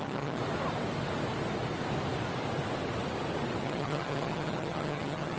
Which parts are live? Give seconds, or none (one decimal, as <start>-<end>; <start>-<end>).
0.4-3.6